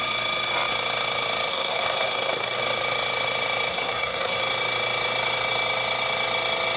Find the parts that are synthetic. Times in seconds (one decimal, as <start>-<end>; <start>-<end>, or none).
1.5-2.6; 3.7-4.4